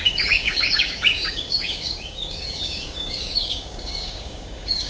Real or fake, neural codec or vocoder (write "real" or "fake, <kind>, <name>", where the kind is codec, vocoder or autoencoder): fake, codec, DAC